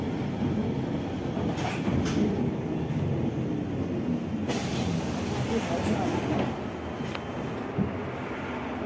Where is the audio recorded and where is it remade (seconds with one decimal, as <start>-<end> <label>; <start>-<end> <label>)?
0.0-8.9 recorded